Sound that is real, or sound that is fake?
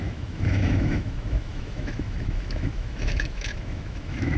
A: fake